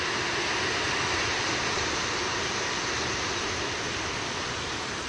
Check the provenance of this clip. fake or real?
real